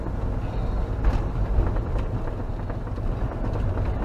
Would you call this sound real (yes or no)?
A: yes